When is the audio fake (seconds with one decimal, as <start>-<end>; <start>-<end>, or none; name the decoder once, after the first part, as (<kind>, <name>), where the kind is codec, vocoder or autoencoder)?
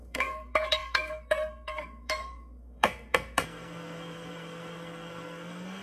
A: 0.0-5.8 (codec, SNAC)